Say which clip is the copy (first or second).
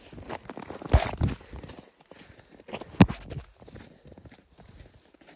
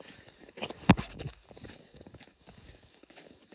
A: second